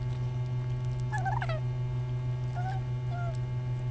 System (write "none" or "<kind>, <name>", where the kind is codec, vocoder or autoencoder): none